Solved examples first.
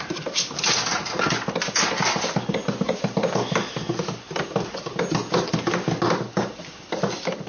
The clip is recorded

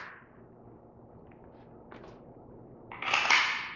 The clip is recorded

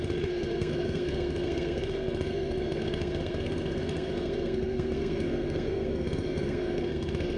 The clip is remade